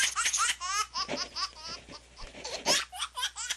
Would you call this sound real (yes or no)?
yes